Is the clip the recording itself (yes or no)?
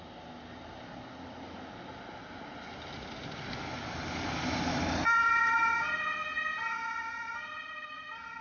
yes